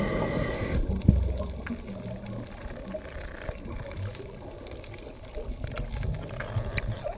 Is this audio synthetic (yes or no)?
no